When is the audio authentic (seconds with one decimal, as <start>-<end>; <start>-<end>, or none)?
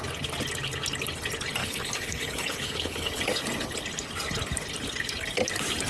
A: 0.0-1.6; 3.2-5.9